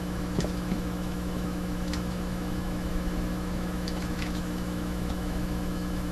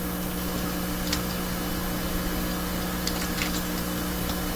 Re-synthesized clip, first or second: first